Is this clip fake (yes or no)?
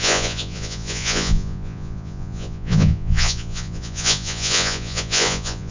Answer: yes